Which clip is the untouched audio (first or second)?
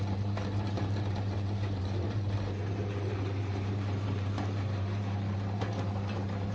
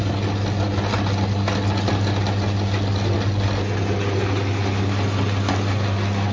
second